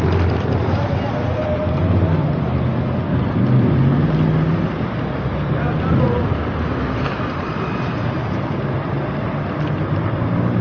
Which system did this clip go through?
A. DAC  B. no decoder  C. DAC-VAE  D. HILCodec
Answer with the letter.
B